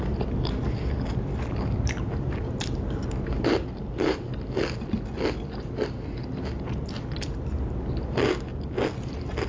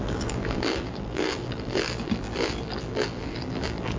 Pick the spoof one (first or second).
second